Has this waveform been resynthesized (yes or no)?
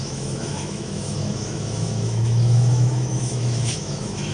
yes